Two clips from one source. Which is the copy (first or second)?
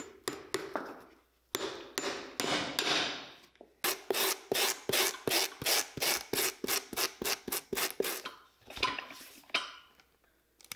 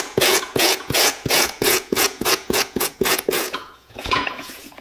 second